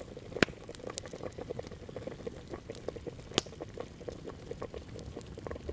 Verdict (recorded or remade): recorded